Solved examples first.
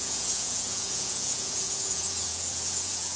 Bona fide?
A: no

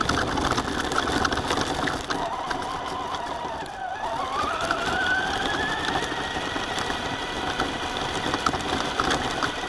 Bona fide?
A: yes